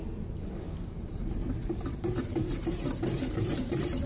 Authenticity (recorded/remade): recorded